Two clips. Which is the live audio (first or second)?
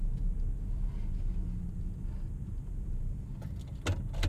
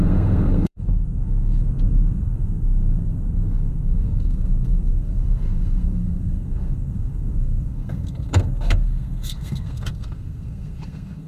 first